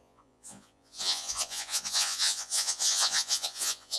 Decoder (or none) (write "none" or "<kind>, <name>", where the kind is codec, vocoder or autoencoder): vocoder, Vocos